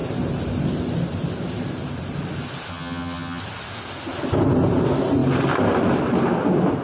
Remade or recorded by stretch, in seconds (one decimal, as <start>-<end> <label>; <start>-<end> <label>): 0.0-2.7 recorded; 2.7-3.4 remade; 3.4-6.8 recorded